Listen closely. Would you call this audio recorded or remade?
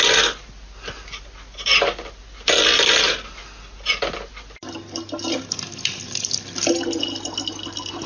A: recorded